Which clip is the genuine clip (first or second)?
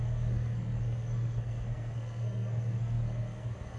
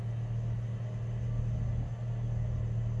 second